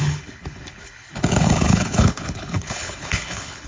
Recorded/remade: remade